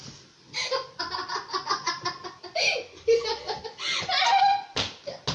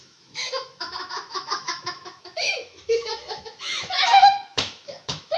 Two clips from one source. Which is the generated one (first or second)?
second